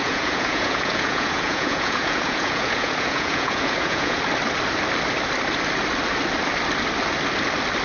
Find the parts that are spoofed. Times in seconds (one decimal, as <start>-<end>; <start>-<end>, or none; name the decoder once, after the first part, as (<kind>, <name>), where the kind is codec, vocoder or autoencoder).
0.0-4.2 (vocoder, Vocos)